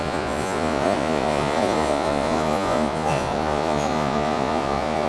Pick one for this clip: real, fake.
fake